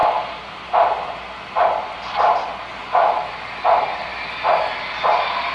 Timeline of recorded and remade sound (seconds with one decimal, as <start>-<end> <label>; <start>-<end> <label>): 0.0-5.5 recorded